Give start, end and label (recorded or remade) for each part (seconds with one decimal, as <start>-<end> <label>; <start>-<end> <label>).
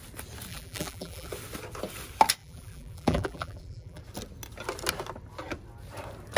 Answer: 0.0-0.5 recorded; 0.5-1.3 remade; 1.3-2.4 recorded; 2.4-4.0 remade; 4.0-6.4 recorded